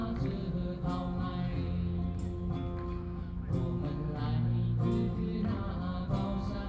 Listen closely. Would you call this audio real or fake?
real